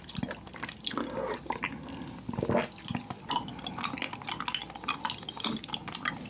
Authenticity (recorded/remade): recorded